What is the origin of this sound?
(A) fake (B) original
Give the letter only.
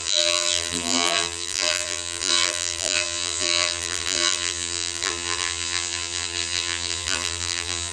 A